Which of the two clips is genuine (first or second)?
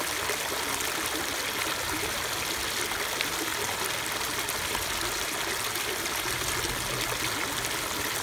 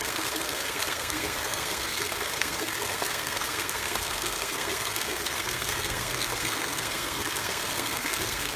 first